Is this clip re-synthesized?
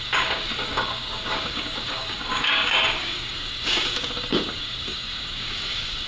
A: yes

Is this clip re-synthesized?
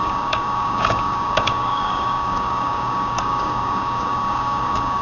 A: yes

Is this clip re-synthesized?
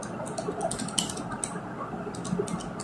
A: no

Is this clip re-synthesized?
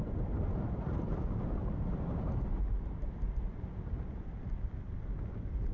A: no